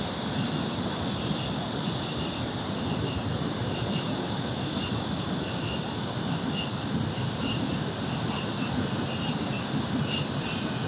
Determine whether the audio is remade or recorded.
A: recorded